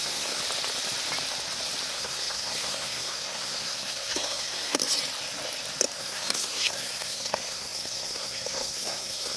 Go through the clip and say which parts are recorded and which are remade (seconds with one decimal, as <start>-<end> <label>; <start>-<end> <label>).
0.0-0.4 remade; 0.4-1.9 recorded; 1.9-4.8 remade; 4.8-6.0 recorded; 6.0-9.4 remade